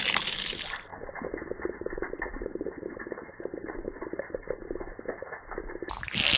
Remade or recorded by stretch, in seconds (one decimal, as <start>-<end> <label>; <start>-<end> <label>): 0.0-6.4 recorded